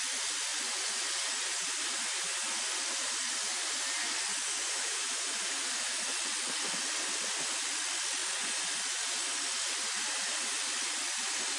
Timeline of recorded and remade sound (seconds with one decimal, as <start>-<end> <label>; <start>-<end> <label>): 0.0-0.5 recorded; 0.5-1.0 remade; 1.0-4.3 recorded; 4.3-5.4 remade; 5.4-8.2 recorded; 8.2-8.8 remade; 8.8-11.6 recorded